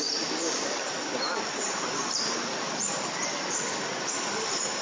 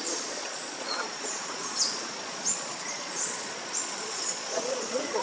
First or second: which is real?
first